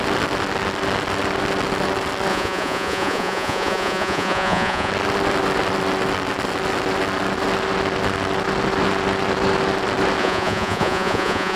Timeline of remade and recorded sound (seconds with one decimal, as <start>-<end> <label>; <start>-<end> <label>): 0.0-2.3 recorded; 2.3-4.9 remade; 4.9-10.2 recorded; 10.2-11.6 remade